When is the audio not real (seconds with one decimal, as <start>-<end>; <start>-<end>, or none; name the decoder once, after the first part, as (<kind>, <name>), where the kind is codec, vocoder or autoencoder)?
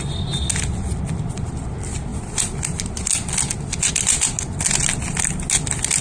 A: none